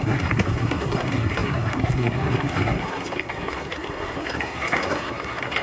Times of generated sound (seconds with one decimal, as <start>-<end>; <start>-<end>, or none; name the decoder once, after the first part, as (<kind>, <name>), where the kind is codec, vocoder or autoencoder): 0.0-5.6 (codec, SNAC)